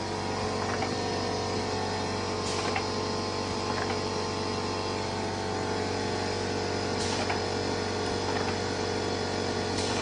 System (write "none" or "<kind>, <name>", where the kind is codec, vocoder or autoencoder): none